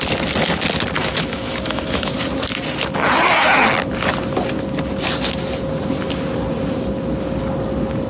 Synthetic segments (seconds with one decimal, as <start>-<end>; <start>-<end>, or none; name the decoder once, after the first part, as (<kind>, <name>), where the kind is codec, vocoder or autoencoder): 1.0-2.1 (autoencoder, DAC-VAE)